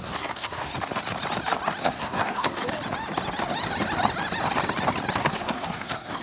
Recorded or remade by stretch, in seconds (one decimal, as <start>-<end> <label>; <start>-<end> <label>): 0.0-0.7 remade; 0.7-1.8 recorded; 1.8-2.6 remade; 2.6-5.2 recorded; 5.2-6.2 remade